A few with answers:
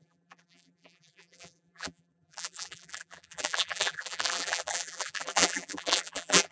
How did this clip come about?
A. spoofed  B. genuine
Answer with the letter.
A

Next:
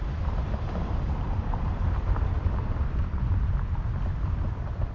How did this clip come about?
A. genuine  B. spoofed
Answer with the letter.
B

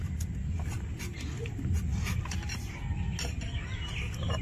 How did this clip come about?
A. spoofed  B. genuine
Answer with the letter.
B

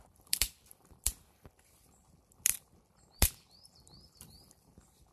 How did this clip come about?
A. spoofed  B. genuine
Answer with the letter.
A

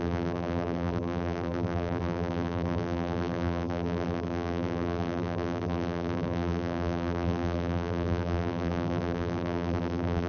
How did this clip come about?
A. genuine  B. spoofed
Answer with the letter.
B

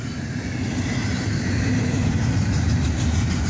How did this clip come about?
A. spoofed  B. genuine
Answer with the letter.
B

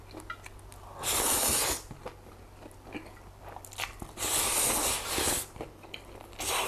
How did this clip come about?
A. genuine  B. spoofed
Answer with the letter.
A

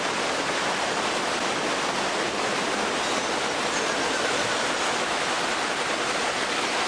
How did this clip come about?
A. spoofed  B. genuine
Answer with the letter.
B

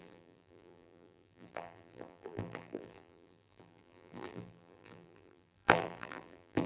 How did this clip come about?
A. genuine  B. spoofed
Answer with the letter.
B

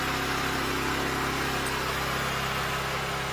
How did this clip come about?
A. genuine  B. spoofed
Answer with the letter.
A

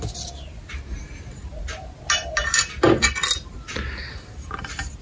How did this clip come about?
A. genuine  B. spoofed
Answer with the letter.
A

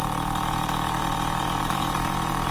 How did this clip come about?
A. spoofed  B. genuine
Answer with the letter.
A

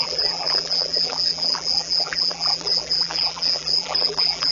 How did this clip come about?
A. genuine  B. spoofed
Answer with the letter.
B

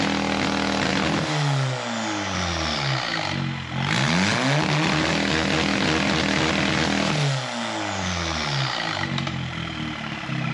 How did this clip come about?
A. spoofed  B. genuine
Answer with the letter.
B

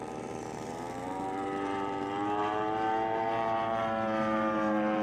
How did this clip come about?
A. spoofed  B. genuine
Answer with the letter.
A